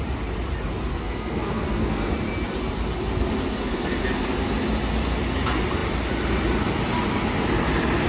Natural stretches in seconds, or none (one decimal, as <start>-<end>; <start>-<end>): 0.0-0.9; 2.1-3.5; 4.0-8.1